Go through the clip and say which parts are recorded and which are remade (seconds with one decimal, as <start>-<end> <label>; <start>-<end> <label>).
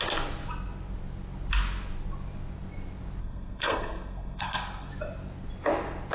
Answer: 0.0-3.2 recorded; 3.2-4.9 remade; 4.9-6.1 recorded